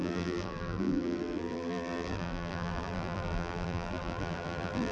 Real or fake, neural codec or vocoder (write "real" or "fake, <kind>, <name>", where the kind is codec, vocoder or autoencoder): fake, vocoder, BigVGAN v2